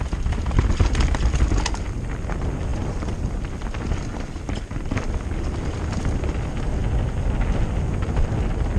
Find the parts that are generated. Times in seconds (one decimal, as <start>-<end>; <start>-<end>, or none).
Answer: none